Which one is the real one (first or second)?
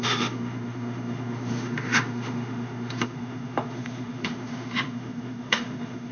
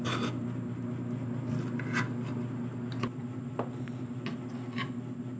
second